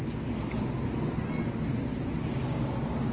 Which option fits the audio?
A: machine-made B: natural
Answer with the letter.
B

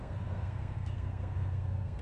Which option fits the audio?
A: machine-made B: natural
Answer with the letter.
A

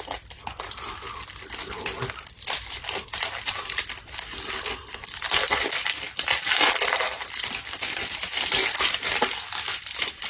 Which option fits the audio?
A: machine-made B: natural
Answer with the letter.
B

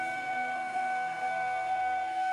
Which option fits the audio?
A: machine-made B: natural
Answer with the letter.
A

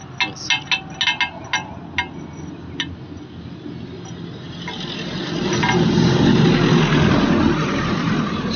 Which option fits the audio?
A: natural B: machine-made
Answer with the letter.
A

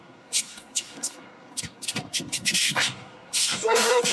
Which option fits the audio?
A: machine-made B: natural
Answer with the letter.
A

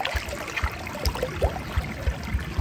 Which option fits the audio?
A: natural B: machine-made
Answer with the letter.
A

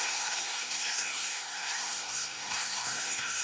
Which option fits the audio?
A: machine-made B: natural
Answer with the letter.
A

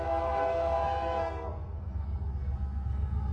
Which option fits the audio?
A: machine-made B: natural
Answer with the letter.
A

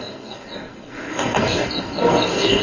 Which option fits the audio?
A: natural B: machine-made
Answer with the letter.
B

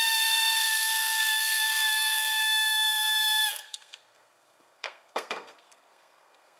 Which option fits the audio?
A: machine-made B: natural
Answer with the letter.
A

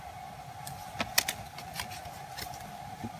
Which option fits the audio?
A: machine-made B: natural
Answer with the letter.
B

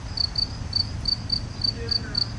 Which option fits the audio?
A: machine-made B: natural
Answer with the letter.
B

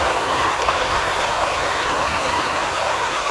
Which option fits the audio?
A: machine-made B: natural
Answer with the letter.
A